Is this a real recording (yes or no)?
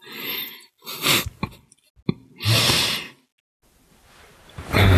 yes